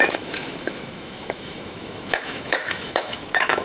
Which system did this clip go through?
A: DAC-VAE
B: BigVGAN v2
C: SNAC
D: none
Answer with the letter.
A